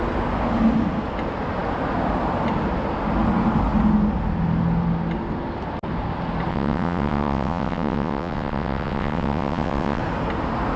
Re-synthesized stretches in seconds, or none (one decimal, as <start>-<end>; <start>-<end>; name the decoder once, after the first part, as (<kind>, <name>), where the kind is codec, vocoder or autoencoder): 6.5-10.0 (vocoder, WaveNeXt)